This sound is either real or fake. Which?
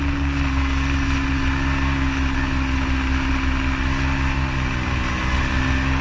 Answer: real